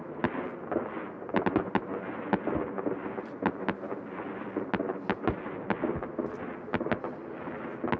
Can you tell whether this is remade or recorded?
recorded